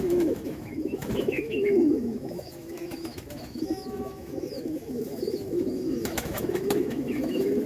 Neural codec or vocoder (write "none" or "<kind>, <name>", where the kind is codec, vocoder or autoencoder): autoencoder, DAC-VAE